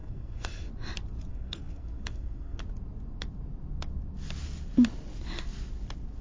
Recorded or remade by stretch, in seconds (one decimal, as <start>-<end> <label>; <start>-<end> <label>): 0.0-0.7 remade; 0.7-1.3 recorded; 1.3-2.6 remade; 2.6-6.2 recorded